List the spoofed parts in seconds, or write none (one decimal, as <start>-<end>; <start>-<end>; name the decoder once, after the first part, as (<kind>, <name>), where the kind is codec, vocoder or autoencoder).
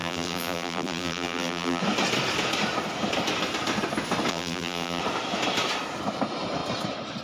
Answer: 0.0-1.8 (vocoder, BigVGAN v2); 4.3-5.0